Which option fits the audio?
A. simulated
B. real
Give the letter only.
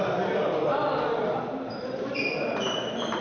B